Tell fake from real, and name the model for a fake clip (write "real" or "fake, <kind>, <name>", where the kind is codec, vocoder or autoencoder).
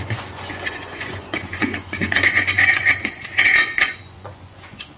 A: fake, vocoder, Vocos